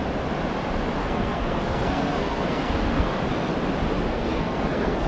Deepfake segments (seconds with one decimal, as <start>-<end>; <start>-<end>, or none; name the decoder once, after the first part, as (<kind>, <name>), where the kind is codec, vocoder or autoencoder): 1.0-3.2 (codec, SNAC); 4.1-5.1